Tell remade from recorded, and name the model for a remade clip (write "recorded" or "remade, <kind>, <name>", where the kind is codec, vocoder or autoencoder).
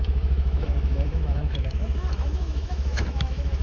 remade, autoencoder, DAC-VAE